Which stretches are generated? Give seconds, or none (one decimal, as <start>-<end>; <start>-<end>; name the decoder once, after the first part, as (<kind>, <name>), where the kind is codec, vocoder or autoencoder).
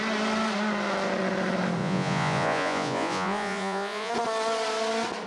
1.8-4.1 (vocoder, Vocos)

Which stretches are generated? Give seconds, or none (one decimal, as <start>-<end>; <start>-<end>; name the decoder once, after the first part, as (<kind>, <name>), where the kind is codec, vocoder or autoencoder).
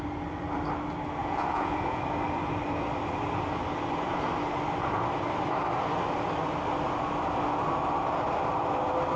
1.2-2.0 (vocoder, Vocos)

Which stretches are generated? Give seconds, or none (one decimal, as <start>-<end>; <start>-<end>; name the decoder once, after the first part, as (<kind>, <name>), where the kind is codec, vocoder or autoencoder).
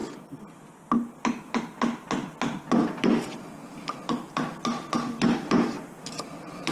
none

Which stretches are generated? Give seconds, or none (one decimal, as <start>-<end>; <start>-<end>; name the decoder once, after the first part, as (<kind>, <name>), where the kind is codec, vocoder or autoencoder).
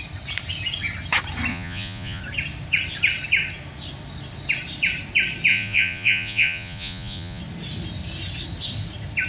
1.5-2.2 (vocoder, Vocos); 5.5-7.4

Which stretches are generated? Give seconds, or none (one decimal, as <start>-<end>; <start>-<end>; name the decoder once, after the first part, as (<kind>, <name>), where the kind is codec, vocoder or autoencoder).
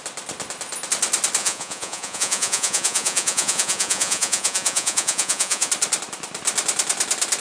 1.4-5.7 (vocoder, Vocos)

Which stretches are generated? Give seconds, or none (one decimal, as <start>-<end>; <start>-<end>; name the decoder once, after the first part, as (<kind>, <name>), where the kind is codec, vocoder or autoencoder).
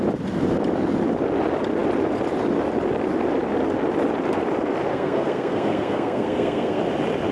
4.9-6.8 (codec, SNAC)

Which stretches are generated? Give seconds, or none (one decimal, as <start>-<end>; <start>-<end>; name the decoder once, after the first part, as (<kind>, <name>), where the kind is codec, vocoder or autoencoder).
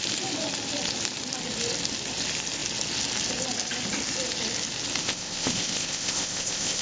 5.0-6.8 (codec, ZipCodec)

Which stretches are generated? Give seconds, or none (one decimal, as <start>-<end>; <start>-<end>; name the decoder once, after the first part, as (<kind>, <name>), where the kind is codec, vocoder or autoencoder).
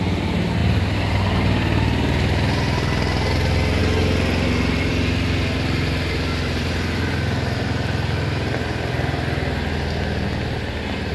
none